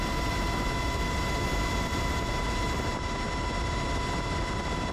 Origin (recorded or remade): recorded